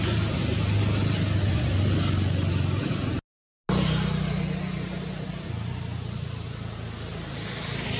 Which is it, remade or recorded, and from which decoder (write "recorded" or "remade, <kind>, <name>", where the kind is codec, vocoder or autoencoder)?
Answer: recorded